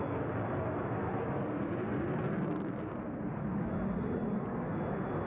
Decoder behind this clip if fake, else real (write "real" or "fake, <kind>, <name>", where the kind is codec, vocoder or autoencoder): real